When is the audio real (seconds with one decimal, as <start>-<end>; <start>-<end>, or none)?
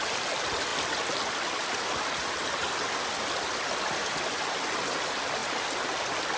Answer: 0.0-6.4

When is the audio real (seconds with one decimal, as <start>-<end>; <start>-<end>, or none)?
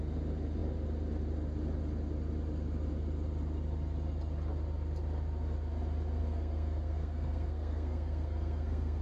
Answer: 0.0-6.2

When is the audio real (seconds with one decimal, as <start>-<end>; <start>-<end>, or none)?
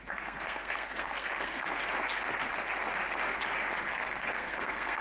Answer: 1.7-3.8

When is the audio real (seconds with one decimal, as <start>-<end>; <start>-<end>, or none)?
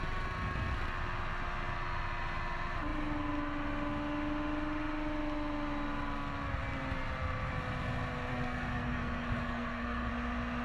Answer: 0.0-8.3; 10.1-10.6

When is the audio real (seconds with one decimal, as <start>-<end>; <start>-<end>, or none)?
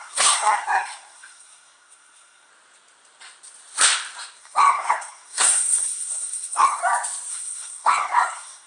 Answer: 2.5-4.4; 6.8-7.3